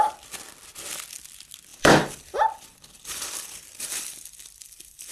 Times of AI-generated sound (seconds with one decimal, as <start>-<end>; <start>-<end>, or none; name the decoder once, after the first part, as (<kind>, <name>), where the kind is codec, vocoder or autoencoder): 1.7-5.1 (vocoder, BigVGAN v2)